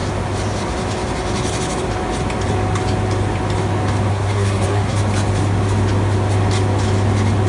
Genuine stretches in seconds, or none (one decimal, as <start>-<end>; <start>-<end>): 0.0-4.1; 5.0-7.5